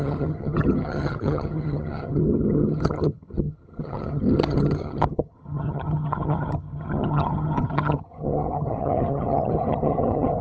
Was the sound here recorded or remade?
remade